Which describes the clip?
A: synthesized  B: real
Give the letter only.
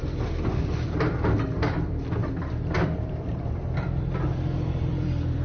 A